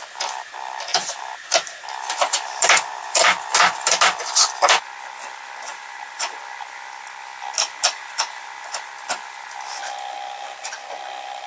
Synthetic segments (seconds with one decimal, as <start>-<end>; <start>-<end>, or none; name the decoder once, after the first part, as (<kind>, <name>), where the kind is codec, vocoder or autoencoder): 0.9-4.2 (vocoder, BigVGAN v2); 5.7-6.4; 7.8-8.9